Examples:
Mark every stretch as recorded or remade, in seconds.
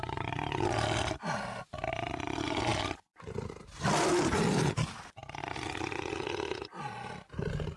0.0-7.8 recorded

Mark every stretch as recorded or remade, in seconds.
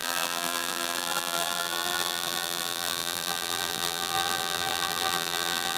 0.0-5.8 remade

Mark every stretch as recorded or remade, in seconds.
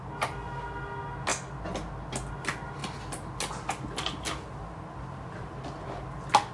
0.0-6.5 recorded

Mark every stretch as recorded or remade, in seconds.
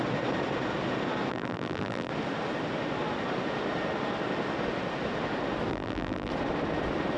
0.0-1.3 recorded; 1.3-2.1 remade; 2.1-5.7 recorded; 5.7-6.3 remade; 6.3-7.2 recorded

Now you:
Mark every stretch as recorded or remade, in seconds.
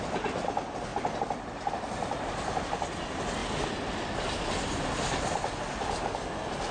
0.0-6.7 recorded